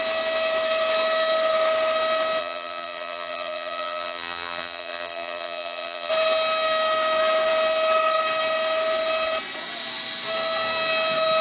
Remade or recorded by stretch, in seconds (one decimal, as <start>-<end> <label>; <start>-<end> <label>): 0.0-2.4 recorded; 2.4-6.1 remade; 6.1-11.4 recorded